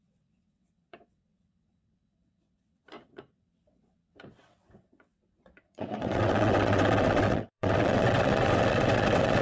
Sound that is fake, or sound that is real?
fake